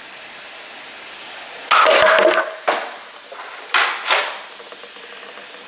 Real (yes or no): yes